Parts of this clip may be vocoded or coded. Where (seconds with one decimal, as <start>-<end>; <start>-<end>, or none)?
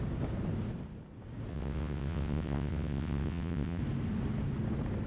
1.5-3.8